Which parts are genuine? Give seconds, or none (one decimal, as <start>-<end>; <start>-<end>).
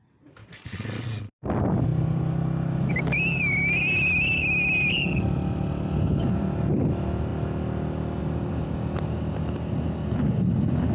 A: 0.0-0.4; 1.3-10.9